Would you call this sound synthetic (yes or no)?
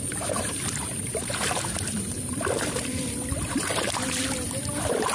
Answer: yes